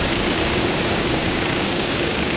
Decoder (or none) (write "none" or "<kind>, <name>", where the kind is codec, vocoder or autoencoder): codec, DAC